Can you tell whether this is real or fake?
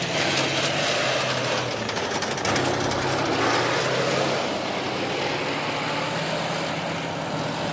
real